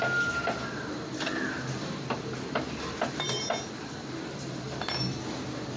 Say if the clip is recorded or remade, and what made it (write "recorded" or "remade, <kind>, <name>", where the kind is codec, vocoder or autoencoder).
recorded